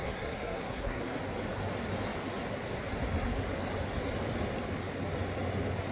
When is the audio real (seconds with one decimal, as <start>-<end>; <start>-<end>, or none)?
1.2-5.9